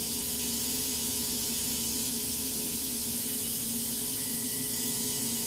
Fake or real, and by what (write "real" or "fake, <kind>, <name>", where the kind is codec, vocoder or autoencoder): fake, autoencoder, DAC-VAE